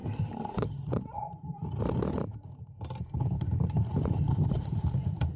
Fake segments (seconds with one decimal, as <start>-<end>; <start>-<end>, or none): 0.0-1.8; 2.3-5.4